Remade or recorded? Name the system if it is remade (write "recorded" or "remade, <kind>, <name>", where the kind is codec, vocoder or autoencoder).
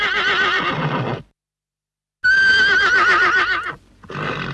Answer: recorded